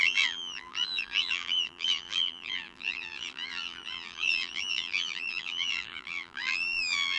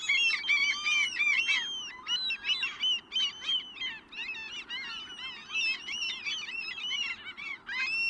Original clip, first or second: second